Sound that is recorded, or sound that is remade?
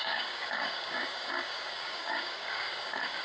remade